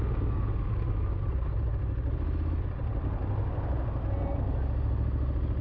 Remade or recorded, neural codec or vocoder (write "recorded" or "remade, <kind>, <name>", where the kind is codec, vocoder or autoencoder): recorded